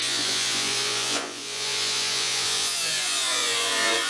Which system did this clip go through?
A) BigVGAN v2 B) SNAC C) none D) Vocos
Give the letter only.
D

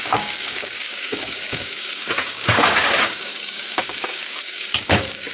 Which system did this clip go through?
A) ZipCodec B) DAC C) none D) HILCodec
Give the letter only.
B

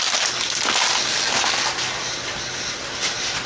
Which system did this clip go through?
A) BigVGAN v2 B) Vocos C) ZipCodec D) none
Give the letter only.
D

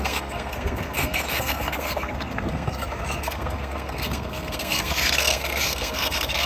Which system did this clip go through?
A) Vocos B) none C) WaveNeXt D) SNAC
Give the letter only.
D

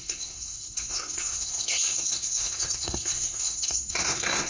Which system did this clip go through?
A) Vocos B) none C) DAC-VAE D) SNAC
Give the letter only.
D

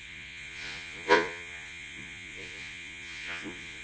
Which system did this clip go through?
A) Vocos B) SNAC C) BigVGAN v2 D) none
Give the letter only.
A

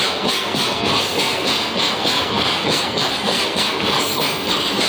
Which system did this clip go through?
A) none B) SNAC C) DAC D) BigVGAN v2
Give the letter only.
B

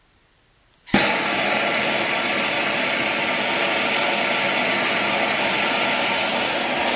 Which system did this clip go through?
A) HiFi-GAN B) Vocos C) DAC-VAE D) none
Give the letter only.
D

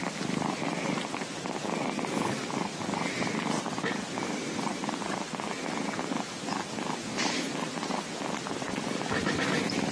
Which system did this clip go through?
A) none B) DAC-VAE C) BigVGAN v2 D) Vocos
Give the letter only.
C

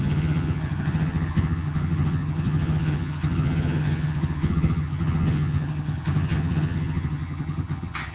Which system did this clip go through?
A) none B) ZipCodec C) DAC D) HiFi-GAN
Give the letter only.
D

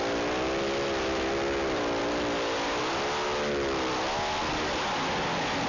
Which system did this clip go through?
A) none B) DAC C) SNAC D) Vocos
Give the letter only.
A